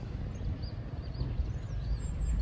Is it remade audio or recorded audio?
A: recorded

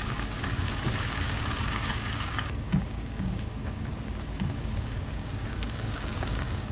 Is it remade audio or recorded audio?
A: remade